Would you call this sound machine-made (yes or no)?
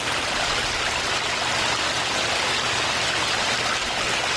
no